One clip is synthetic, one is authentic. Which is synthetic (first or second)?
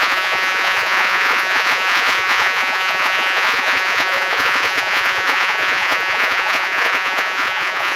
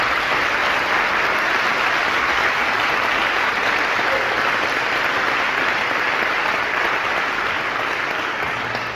first